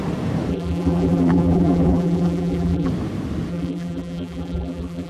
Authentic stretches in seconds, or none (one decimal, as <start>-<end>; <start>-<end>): 0.0-0.5; 2.9-3.5